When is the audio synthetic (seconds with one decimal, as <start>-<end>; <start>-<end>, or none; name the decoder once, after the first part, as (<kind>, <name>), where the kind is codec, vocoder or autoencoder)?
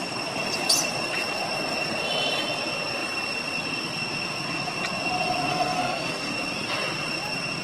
5.5-6.3 (codec, SNAC)